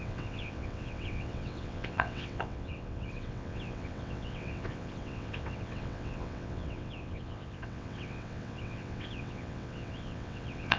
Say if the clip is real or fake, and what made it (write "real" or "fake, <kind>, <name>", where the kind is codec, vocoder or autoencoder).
fake, vocoder, WaveNeXt